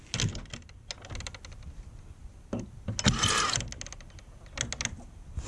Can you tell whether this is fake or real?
real